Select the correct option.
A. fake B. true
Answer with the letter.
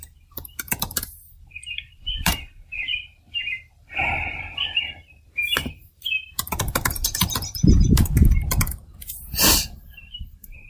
A